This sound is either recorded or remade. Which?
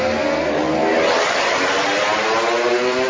recorded